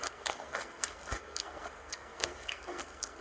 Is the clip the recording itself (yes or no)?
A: no